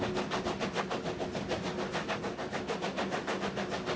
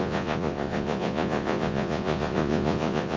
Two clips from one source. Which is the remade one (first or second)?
second